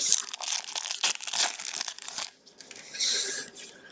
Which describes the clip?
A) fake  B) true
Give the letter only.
B